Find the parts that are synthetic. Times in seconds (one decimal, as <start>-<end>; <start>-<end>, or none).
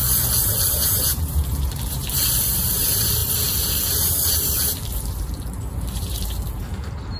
0.7-7.2